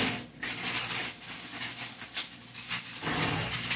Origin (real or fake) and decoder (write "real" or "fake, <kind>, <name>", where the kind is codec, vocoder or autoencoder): real